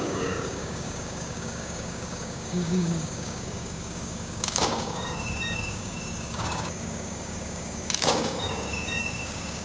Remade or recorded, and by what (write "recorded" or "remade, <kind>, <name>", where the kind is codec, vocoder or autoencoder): remade, codec, DAC